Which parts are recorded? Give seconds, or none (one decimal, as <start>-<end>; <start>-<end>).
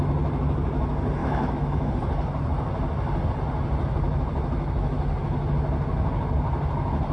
0.0-1.2; 1.9-7.1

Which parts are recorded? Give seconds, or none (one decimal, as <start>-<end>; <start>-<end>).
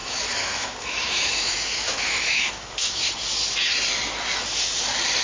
3.1-5.2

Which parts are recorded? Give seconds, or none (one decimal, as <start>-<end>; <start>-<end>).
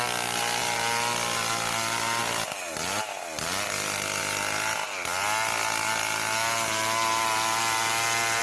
0.0-8.4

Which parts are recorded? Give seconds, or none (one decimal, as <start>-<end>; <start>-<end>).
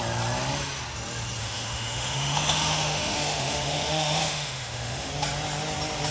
0.0-1.4; 5.1-6.1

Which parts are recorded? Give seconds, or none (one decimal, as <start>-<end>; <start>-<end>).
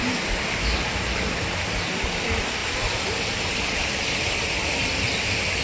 0.0-5.6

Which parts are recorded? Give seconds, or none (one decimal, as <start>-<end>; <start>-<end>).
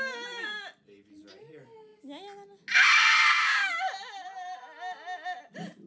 0.0-5.9